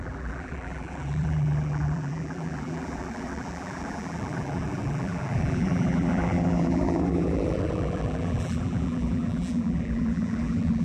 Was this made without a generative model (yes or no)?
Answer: no